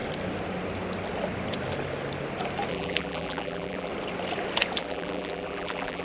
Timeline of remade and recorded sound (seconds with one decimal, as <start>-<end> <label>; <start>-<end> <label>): 0.0-2.7 recorded; 2.7-3.9 remade; 3.9-4.8 recorded; 4.8-6.0 remade